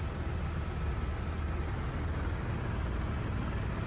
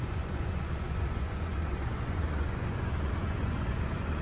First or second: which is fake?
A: second